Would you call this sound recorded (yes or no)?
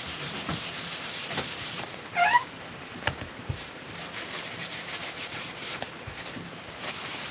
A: no